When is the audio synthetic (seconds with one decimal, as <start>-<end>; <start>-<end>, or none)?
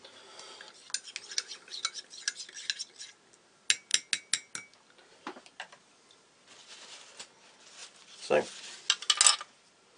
none